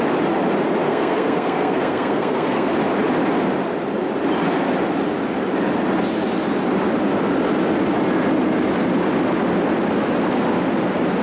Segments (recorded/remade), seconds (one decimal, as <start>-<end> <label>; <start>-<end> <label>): 0.0-0.9 recorded; 0.9-2.7 remade; 2.7-11.2 recorded